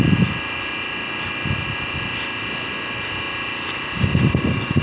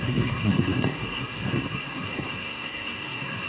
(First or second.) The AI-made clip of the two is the second